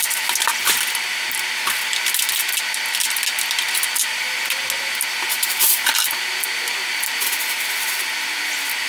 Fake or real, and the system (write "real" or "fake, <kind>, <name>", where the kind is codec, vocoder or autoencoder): real